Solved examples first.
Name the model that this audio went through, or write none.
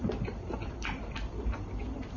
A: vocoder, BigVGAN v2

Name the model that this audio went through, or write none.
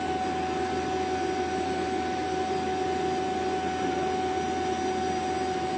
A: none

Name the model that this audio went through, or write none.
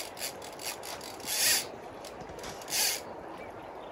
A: none